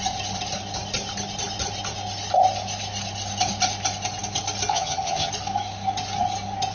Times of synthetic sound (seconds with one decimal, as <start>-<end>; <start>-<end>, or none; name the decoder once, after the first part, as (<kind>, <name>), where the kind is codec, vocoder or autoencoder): 4.7-5.3 (vocoder, HiFi-GAN)